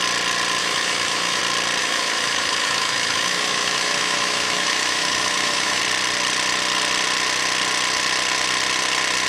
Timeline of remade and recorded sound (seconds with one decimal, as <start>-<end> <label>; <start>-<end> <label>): 0.0-0.6 recorded; 0.6-1.4 remade; 1.4-1.8 recorded; 1.8-5.8 remade; 5.8-9.3 recorded

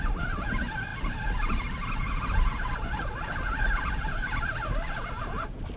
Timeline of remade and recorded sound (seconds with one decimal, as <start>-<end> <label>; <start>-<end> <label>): 0.0-4.2 recorded; 4.2-5.3 remade; 5.3-5.8 recorded

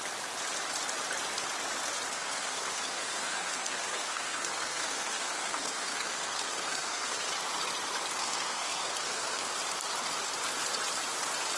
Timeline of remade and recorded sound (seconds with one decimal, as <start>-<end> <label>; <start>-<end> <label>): 0.0-2.1 recorded; 2.1-7.3 remade; 7.3-8.2 recorded; 8.2-9.5 remade; 9.5-11.6 recorded

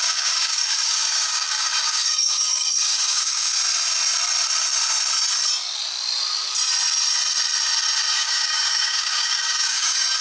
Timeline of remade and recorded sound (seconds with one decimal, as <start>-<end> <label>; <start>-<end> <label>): 0.0-3.5 remade; 3.5-8.1 recorded; 8.1-10.2 remade